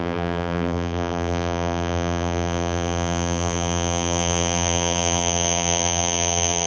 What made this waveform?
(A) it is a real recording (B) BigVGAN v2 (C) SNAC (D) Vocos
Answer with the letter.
B